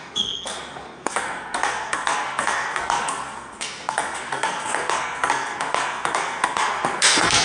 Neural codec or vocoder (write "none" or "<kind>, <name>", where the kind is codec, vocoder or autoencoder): codec, SNAC